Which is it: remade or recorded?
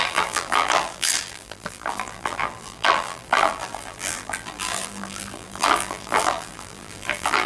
remade